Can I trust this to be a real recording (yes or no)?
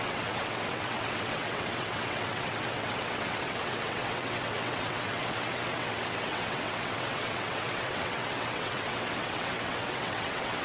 no